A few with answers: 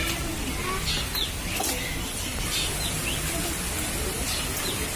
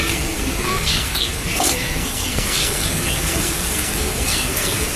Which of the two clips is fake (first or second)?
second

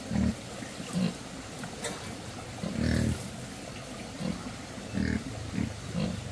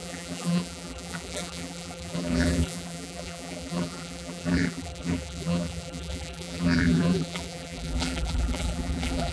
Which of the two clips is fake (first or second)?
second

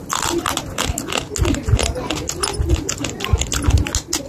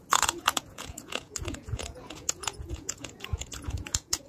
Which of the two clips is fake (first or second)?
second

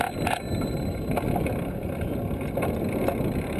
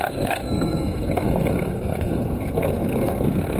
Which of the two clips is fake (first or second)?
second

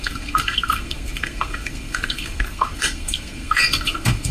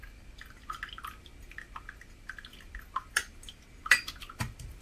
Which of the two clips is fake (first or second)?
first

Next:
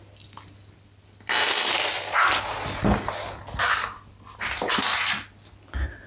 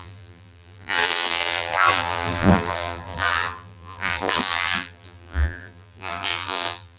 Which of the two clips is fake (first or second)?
second